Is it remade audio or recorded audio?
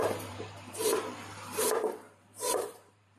remade